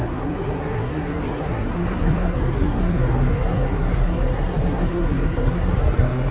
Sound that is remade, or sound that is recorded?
remade